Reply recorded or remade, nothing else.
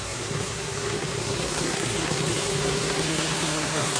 remade